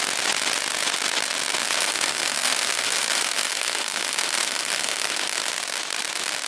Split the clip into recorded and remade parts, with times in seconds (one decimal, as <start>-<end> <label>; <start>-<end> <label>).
0.0-1.6 recorded; 1.6-5.5 remade; 5.5-6.5 recorded